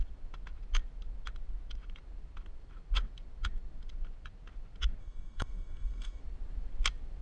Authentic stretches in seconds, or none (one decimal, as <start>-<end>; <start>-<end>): 0.0-5.0; 6.2-7.2